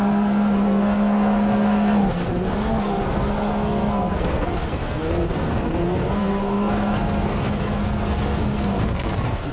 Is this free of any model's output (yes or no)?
no